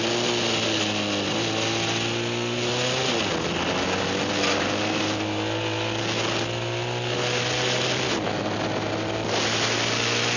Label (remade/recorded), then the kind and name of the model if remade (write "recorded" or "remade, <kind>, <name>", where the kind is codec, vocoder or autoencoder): recorded